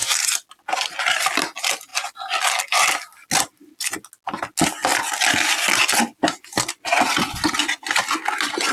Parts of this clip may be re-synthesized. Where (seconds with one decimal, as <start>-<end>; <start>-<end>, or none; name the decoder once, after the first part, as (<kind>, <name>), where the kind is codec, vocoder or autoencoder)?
none